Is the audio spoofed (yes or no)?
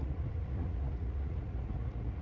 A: yes